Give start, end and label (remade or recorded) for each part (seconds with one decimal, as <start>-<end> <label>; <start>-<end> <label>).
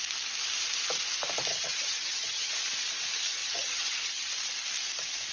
0.0-1.5 recorded; 1.5-2.5 remade; 2.5-3.4 recorded; 3.4-4.3 remade; 4.3-5.3 recorded